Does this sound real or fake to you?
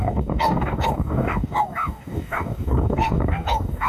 fake